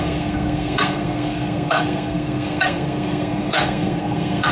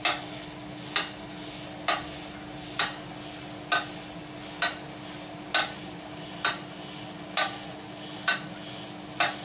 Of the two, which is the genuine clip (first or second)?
second